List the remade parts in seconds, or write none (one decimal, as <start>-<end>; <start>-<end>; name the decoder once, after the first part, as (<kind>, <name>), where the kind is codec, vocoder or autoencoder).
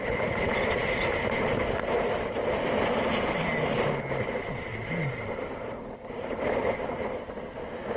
none